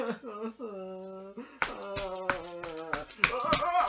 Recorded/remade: recorded